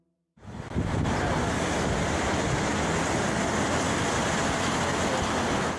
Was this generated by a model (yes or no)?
no